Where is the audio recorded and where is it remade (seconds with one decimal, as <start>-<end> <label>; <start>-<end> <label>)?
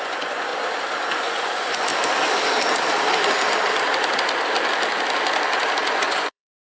0.0-0.5 remade; 0.5-1.2 recorded; 1.2-1.9 remade; 1.9-5.9 recorded; 5.9-6.6 remade